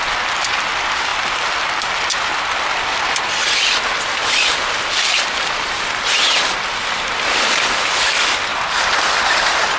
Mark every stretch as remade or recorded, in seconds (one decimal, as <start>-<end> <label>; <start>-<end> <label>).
0.0-1.1 recorded; 1.1-2.5 remade; 2.5-8.5 recorded; 8.5-9.2 remade; 9.2-9.8 recorded